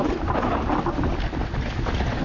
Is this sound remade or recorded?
recorded